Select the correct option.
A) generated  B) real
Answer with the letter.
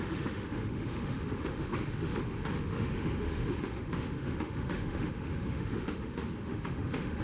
A